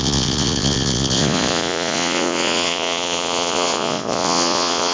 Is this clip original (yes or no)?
no